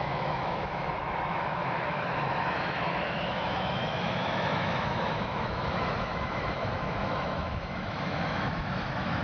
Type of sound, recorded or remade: remade